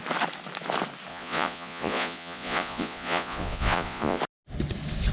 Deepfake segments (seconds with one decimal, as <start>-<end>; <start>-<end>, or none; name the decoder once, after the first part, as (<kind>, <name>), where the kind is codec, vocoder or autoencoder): 1.1-4.2 (vocoder, Vocos)